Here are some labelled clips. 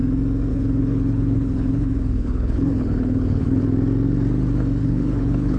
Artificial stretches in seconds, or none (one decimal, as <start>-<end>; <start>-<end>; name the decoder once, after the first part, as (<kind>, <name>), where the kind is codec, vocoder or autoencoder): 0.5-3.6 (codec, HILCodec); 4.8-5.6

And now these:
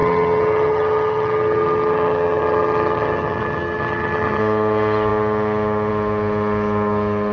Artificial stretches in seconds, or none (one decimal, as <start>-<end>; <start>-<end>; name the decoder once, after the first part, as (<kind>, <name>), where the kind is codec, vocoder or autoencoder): 0.0-4.4 (vocoder, HiFi-GAN)

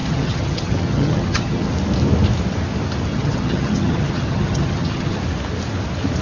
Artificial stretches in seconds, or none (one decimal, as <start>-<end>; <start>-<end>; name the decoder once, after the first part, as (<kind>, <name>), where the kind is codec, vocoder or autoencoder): 0.0-1.7 (vocoder, HiFi-GAN); 3.1-5.2

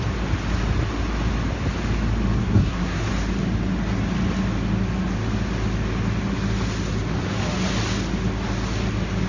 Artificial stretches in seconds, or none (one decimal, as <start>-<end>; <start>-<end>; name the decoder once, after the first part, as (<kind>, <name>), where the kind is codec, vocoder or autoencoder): 2.4-3.1 (codec, SNAC)

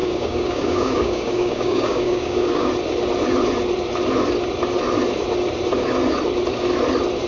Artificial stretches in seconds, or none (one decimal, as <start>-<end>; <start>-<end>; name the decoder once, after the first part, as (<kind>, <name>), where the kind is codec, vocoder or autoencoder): 0.0-2.7 (codec, DAC)

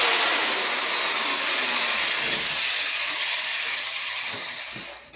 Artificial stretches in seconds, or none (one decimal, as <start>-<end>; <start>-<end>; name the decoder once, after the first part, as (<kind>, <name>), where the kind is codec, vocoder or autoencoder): 3.7-4.6 (vocoder, HiFi-GAN)